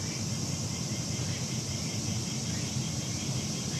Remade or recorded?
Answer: recorded